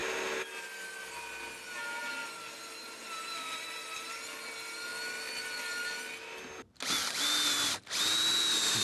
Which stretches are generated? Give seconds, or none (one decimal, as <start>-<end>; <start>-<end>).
none